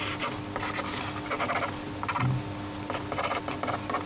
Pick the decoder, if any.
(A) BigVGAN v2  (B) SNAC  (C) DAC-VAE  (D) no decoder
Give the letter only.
D